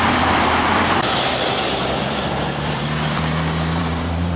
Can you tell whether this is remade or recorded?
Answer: remade